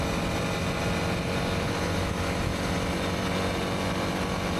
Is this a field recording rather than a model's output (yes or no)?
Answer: yes